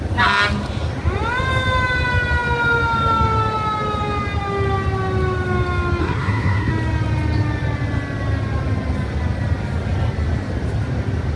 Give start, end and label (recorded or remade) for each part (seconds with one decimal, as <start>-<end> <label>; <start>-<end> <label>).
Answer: 0.0-6.0 recorded; 6.0-6.7 remade; 6.7-11.4 recorded

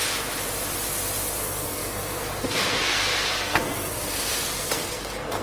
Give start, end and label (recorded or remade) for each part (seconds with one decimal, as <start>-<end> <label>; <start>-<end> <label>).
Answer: 0.0-1.4 recorded; 1.4-5.4 remade

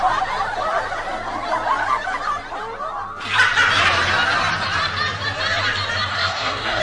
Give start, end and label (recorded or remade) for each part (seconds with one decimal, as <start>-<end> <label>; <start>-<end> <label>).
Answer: 0.0-6.1 recorded; 6.1-6.8 remade